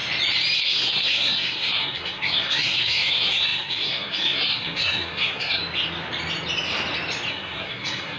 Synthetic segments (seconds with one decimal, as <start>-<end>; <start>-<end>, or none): 0.6-5.6; 7.3-8.2